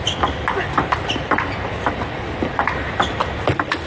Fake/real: real